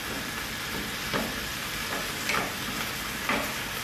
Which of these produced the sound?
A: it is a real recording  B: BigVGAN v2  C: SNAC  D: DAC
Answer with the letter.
A